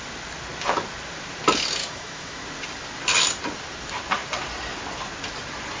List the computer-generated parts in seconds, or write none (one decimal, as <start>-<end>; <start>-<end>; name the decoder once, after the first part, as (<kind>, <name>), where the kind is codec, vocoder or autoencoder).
1.8-2.4 (autoencoder, DAC-VAE)